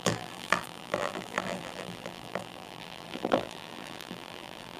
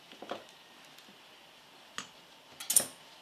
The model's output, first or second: first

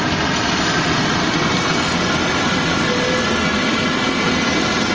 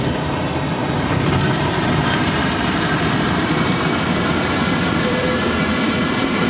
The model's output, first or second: second